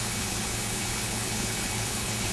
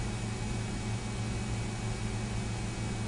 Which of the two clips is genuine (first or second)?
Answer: second